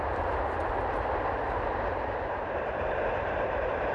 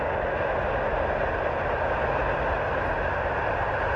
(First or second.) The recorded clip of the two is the second